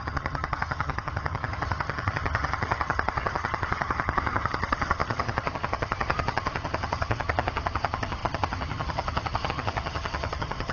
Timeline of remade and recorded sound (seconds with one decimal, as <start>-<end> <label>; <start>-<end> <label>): 0.0-10.7 remade